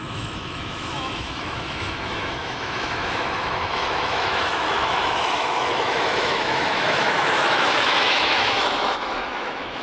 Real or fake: fake